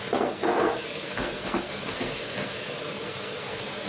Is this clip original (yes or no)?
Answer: no